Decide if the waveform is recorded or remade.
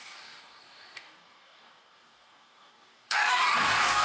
remade